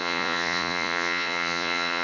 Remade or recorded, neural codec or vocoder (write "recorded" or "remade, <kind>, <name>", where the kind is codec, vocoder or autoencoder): remade, vocoder, Vocos